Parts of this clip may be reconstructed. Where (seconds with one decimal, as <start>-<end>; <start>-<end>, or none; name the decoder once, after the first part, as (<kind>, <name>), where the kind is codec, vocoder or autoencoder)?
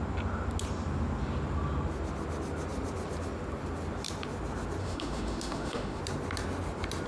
4.8-6.0 (autoencoder, DAC-VAE)